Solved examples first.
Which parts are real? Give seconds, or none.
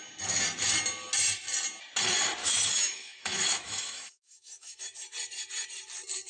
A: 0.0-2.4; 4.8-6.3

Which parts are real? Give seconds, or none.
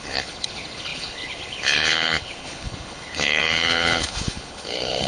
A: none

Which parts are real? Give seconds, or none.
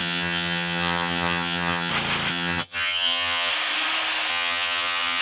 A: 1.9-2.3; 3.5-4.3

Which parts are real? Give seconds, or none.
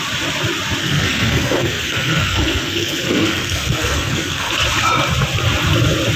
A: 0.0-0.8; 4.5-6.2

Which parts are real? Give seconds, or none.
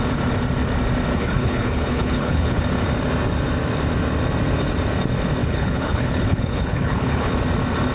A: 0.0-1.1; 2.6-5.4; 7.3-7.9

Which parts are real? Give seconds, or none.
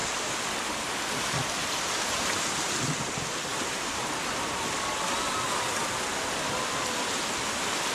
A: 0.0-1.6; 2.5-7.9